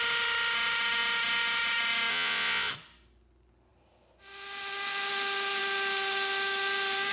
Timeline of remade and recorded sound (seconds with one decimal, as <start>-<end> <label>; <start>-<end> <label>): 0.0-2.1 recorded; 2.1-2.7 remade; 2.7-7.1 recorded